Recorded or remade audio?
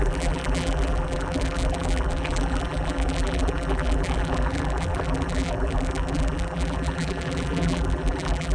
remade